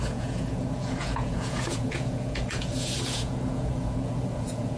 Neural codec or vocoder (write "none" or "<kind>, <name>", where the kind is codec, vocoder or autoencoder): vocoder, Vocos